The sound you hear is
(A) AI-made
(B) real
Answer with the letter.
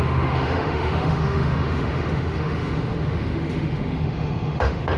A